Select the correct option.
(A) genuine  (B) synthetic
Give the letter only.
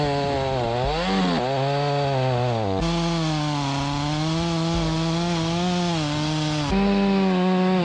A